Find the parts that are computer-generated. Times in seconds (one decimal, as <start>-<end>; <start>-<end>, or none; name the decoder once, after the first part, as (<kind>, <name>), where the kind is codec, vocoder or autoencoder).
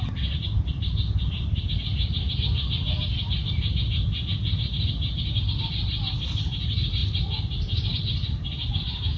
none